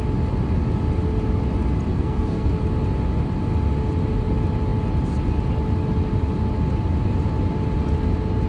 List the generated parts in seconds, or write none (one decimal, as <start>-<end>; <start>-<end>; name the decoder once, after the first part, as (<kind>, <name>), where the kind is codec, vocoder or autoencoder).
1.9-2.5 (codec, SNAC)